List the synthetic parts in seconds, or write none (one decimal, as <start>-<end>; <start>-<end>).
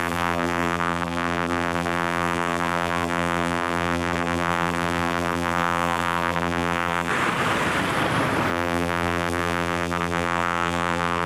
0.0-7.1; 8.5-11.3